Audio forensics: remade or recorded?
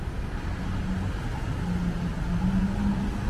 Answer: recorded